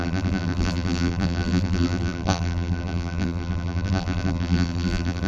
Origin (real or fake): fake